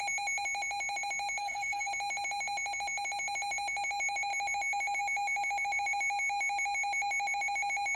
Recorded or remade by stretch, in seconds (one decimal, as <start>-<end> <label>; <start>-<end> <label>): 0.0-1.4 recorded; 1.4-1.9 remade; 1.9-8.0 recorded